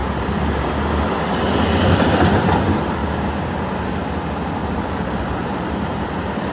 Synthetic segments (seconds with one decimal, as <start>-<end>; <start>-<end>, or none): 0.0-0.7; 3.0-3.9; 4.6-6.0